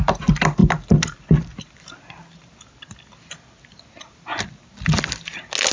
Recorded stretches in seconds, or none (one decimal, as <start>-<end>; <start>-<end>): 0.0-5.7